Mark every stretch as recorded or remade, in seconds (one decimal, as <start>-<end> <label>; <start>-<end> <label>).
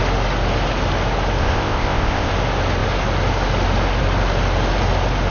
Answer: 0.0-1.4 recorded; 1.4-2.3 remade; 2.3-5.3 recorded